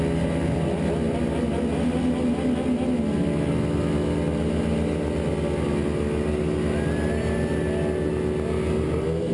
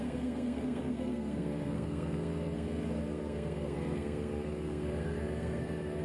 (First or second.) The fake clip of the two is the second